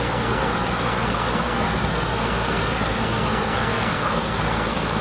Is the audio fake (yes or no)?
yes